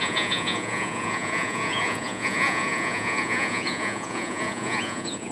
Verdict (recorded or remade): remade